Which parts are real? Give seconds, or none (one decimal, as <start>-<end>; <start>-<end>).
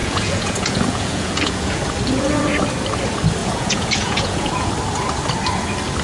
1.8-3.4; 4.7-6.0